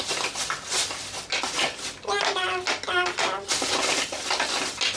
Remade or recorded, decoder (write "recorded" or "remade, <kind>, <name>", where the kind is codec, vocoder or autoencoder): recorded